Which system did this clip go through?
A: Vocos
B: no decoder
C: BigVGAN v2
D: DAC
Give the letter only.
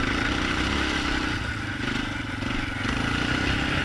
B